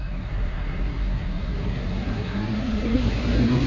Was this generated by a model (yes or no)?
yes